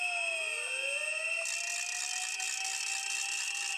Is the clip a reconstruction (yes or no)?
no